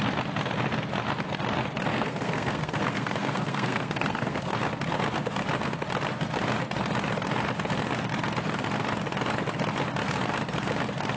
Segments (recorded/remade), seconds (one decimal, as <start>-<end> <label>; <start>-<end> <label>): 0.0-1.9 recorded; 1.9-4.5 remade; 4.5-11.2 recorded